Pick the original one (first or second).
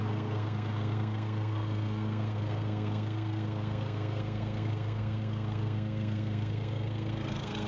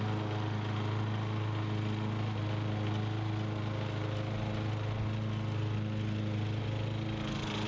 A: second